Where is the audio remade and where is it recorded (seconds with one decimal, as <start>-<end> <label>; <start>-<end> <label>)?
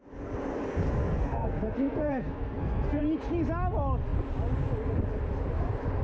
0.0-1.0 recorded; 1.0-3.0 remade; 3.0-6.0 recorded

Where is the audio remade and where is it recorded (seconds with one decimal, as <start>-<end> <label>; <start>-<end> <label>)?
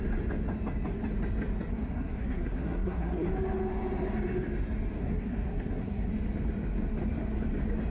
0.0-1.7 recorded; 1.7-3.3 remade; 3.3-5.0 recorded; 5.0-6.1 remade; 6.1-7.9 recorded